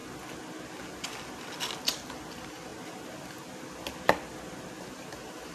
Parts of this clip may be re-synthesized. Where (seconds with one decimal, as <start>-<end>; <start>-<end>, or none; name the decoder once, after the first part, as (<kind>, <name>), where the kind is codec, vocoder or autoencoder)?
2.1-2.7 (vocoder, BigVGAN v2); 4.8-5.5